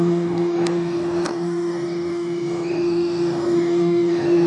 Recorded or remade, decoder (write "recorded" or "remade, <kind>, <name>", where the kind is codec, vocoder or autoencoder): remade, codec, DAC